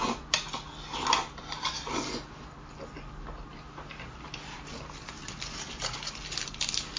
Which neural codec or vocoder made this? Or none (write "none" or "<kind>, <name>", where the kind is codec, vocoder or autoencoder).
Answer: none